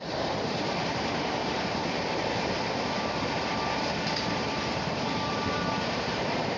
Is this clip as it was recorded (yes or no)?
no